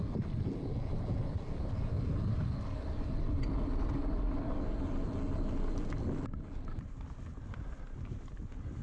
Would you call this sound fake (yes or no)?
no